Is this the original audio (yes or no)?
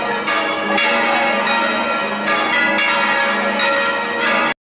yes